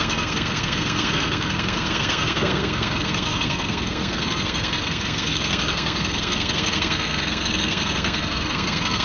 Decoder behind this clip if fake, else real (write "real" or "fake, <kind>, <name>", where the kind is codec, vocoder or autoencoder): fake, codec, SNAC